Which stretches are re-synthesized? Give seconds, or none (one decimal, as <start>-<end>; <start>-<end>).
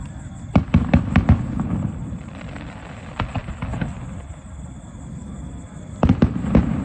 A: none